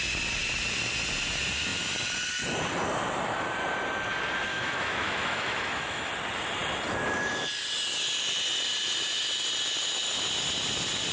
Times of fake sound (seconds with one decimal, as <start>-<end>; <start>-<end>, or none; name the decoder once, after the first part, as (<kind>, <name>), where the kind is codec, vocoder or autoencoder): 4.5-6.1 (autoencoder, DAC-VAE)